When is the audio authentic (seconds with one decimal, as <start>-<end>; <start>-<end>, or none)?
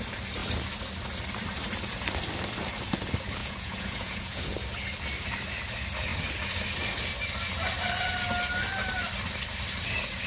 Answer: 0.0-3.4; 4.4-10.3